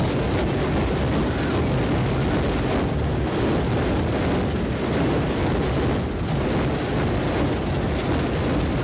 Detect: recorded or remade recorded